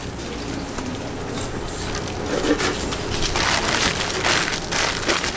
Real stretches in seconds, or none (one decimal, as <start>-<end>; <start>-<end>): 0.0-5.4